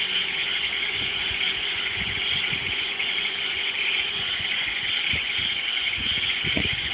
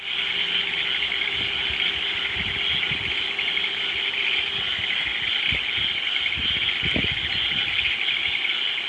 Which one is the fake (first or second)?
first